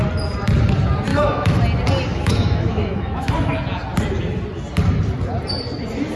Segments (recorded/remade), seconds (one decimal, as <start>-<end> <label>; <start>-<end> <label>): 0.0-1.1 recorded; 1.1-1.6 remade; 1.6-2.1 recorded; 2.1-3.3 remade; 3.3-6.2 recorded

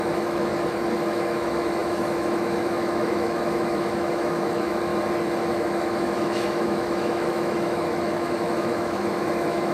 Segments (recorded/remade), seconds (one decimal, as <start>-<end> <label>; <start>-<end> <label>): 0.0-0.5 remade; 0.5-1.1 recorded; 1.1-4.9 remade; 4.9-5.4 recorded; 5.4-9.7 remade

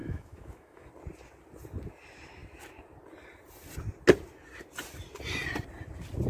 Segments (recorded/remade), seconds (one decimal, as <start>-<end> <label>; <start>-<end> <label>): 0.0-0.9 remade; 0.9-6.3 recorded